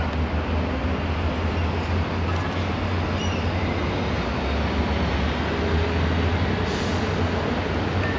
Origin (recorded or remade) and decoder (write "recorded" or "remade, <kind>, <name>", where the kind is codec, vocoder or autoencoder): recorded